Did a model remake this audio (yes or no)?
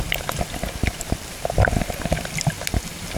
no